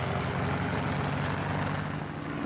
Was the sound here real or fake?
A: real